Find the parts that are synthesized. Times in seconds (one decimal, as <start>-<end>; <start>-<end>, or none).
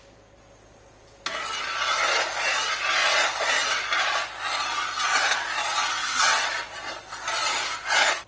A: 6.0-6.5